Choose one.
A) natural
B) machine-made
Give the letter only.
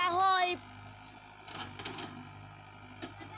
A